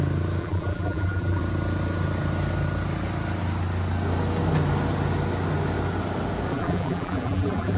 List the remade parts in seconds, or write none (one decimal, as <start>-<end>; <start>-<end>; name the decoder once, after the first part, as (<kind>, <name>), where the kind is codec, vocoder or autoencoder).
0.4-1.4 (vocoder, BigVGAN v2); 6.5-7.8